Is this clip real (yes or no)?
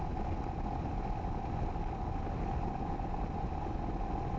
yes